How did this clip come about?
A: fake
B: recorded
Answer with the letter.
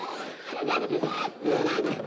B